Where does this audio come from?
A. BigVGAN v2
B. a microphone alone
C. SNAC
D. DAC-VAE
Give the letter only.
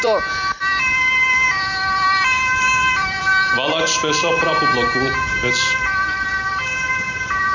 A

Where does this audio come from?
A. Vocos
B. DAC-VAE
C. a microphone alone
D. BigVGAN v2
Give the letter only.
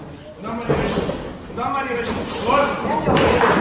C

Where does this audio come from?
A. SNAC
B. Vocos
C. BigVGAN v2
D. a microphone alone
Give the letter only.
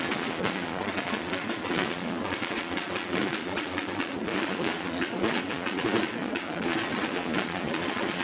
B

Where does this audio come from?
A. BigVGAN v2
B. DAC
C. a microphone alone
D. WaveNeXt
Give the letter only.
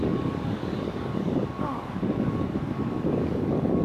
B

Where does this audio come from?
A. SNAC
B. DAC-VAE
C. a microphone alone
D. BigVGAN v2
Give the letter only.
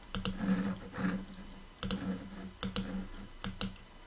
C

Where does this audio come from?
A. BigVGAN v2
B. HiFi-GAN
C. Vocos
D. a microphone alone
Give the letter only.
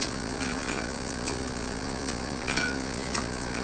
C